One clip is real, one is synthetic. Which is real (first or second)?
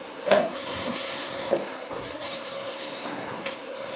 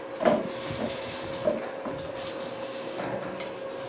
second